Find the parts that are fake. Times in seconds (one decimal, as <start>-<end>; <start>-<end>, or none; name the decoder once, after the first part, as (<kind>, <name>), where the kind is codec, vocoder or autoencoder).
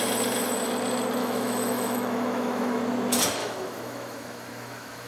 1.2-2.8 (autoencoder, DAC-VAE); 3.4-5.1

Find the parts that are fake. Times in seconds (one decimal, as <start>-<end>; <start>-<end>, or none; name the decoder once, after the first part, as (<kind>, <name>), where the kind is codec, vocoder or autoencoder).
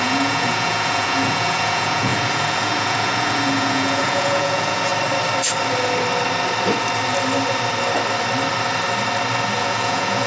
0.0-4.9 (vocoder, Vocos); 9.6-10.3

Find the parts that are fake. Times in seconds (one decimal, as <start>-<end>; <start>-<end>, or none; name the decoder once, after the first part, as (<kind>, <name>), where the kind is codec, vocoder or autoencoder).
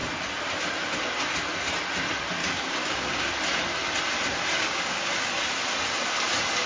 2.4-3.3 (codec, DAC); 4.5-5.3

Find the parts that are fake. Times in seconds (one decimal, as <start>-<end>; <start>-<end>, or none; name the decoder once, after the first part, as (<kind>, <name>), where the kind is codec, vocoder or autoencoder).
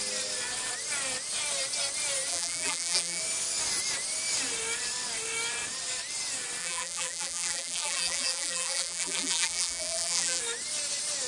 2.3-3.2 (vocoder, BigVGAN v2); 6.6-10.4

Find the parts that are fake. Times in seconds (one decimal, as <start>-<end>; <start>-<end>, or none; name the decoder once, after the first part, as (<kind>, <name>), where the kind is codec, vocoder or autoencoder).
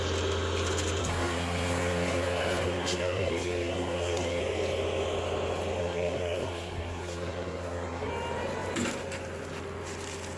1.0-4.4 (codec, SNAC); 5.8-8.1